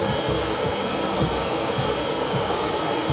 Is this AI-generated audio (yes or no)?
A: yes